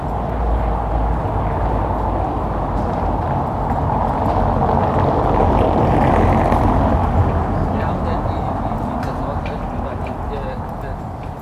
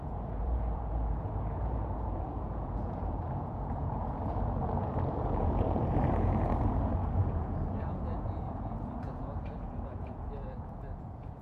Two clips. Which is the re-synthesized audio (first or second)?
second